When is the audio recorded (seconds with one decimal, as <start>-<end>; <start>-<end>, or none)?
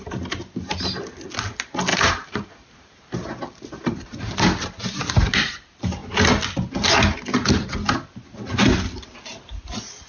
0.0-1.9; 4.4-10.1